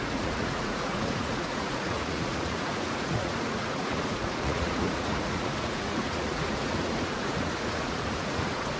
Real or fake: fake